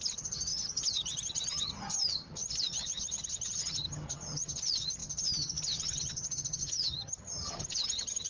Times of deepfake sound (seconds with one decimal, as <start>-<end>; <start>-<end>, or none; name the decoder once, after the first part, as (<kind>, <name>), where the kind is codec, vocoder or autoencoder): 0.0-8.3 (vocoder, HiFi-GAN)